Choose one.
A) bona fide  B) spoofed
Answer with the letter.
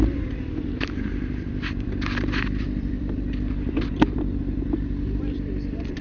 B